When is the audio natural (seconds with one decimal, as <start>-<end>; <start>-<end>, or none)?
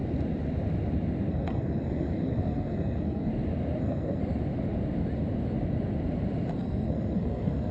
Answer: 0.0-1.3; 3.3-3.8; 4.2-6.5